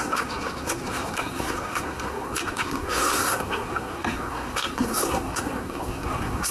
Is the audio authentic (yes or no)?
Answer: no